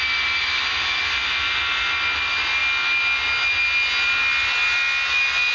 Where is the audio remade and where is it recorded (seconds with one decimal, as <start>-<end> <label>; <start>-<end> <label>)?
0.0-5.5 recorded